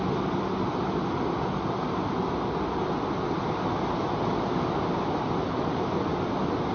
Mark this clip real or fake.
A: real